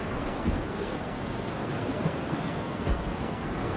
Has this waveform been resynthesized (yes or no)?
yes